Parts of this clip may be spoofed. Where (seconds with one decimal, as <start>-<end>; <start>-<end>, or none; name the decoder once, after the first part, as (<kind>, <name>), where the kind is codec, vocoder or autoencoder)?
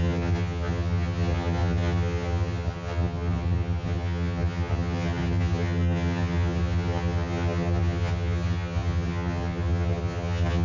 0.0-10.6 (vocoder, HiFi-GAN)